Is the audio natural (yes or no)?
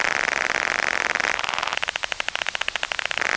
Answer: yes